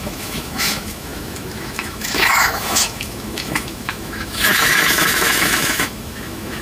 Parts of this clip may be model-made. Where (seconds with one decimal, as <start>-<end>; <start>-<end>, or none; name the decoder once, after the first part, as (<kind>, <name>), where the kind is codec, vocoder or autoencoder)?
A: 0.0-6.6 (autoencoder, DAC-VAE)